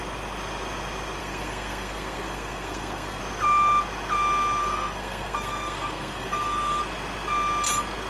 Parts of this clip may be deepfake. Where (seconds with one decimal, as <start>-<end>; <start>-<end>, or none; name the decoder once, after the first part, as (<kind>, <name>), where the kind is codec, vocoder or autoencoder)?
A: 1.2-3.2 (codec, SNAC); 4.6-6.8